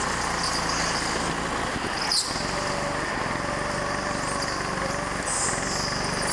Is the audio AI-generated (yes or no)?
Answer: no